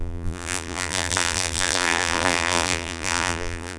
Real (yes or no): no